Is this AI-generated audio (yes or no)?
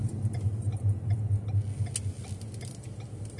no